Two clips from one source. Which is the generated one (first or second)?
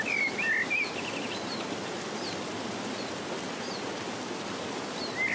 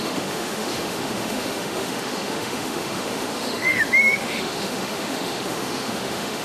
second